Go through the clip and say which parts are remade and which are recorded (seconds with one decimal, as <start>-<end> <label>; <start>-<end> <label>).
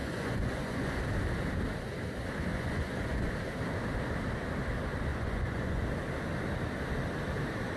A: 0.0-1.0 remade; 1.0-2.5 recorded; 2.5-3.3 remade; 3.3-5.1 recorded; 5.1-5.8 remade; 5.8-7.8 recorded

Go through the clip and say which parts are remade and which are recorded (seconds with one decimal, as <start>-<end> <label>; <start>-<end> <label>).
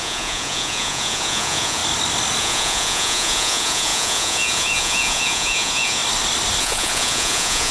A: 0.0-1.8 remade; 1.8-2.4 recorded; 2.4-6.0 remade; 6.0-6.6 recorded; 6.6-7.7 remade